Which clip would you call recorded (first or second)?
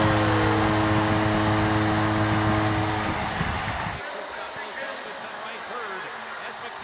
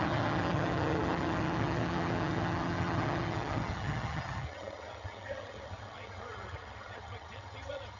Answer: first